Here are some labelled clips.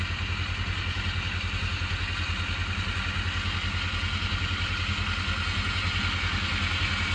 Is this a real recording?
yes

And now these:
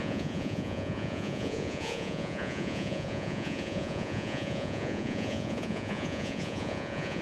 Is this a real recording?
no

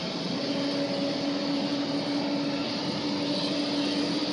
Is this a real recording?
yes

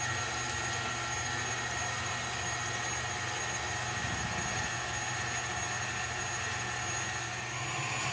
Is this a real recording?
yes